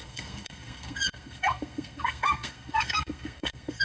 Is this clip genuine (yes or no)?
no